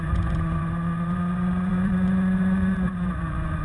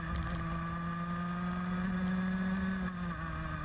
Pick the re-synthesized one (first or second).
first